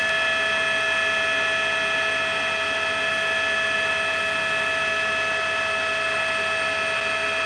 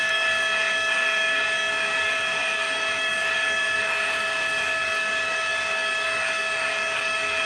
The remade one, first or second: second